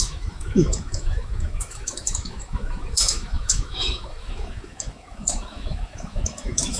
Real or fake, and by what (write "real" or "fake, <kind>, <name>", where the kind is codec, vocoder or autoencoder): fake, autoencoder, DAC-VAE